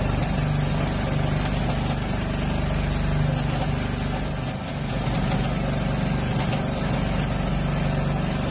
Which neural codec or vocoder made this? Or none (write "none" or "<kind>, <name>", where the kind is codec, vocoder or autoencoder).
none